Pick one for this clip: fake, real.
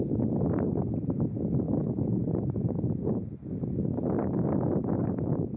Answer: real